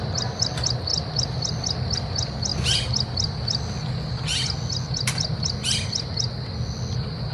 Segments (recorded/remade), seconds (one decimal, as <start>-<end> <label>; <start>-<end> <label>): 0.0-7.3 recorded